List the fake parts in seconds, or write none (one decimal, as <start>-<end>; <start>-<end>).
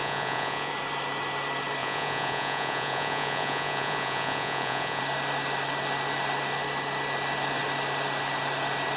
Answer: 0.0-0.7; 1.8-5.0